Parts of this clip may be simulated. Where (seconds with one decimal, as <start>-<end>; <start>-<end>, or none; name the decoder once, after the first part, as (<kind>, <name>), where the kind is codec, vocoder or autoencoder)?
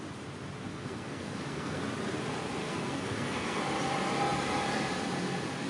0.7-1.8 (codec, SNAC); 2.6-3.6